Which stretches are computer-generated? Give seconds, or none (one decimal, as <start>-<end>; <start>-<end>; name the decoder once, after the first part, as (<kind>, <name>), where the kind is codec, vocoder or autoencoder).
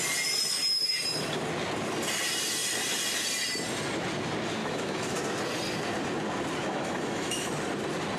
4.6-5.2 (autoencoder, DAC-VAE); 6.6-7.5